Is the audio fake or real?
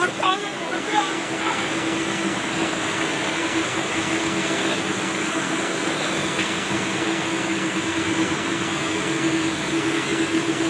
fake